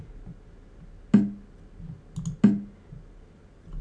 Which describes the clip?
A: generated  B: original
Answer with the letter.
B